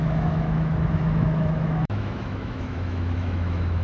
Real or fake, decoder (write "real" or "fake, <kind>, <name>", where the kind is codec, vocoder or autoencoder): fake, autoencoder, DAC-VAE